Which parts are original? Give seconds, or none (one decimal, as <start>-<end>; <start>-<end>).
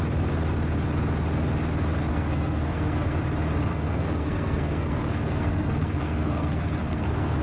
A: 0.0-2.1; 3.2-3.7